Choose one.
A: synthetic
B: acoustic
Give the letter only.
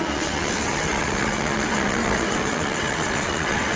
A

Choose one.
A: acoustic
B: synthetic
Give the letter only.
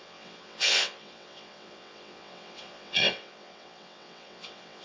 B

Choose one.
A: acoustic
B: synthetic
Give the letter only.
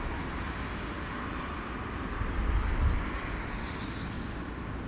A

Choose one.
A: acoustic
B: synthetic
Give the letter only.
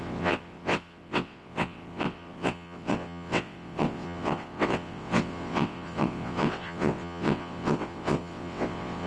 B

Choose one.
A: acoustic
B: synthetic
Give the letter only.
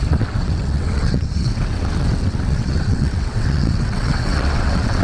B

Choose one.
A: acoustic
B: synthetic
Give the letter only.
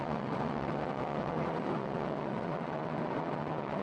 B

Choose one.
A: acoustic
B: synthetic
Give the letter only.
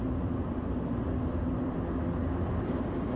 A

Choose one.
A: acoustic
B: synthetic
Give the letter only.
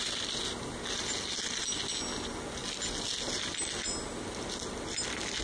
A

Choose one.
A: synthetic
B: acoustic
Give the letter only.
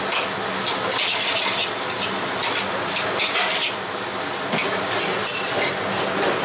B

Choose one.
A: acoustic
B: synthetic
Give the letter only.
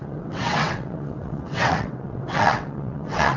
B